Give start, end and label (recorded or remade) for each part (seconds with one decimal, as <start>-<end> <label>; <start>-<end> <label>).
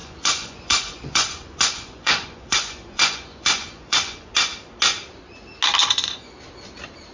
0.0-4.3 remade; 4.3-5.8 recorded; 5.8-6.3 remade; 6.3-7.1 recorded